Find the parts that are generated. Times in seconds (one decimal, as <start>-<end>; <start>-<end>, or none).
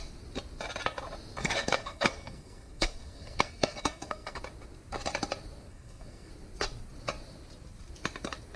1.4-4.4; 5.7-6.3